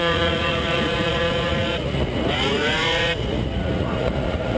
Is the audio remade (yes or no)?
yes